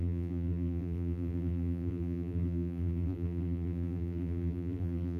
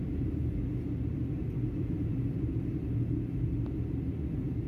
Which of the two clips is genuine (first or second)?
second